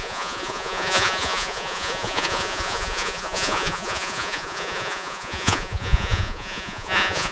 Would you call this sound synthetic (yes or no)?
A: yes